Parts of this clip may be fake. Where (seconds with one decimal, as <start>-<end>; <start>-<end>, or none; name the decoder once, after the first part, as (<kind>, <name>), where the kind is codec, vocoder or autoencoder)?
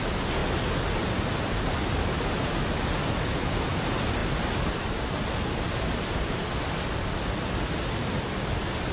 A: none